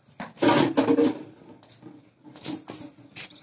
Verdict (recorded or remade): recorded